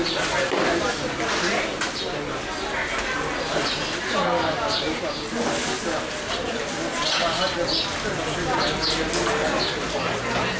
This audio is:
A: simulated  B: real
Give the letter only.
B